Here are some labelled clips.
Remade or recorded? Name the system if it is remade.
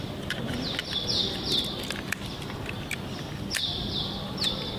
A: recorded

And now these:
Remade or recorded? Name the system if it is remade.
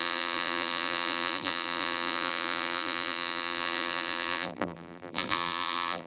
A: remade, vocoder, BigVGAN v2